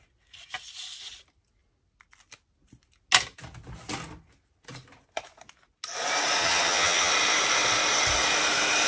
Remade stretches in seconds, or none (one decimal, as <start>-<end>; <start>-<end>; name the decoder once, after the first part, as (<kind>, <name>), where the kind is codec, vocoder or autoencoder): 6.4-7.1 (vocoder, HiFi-GAN)